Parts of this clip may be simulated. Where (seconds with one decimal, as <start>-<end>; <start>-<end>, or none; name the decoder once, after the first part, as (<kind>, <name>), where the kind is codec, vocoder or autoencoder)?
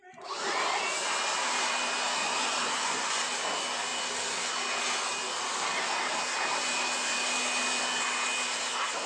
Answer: 2.2-3.2 (vocoder, Vocos)